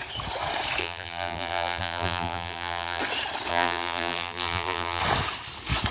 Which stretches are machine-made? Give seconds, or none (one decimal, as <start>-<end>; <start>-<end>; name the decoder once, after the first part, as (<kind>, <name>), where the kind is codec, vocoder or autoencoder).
0.8-3.0 (vocoder, BigVGAN v2); 3.5-5.0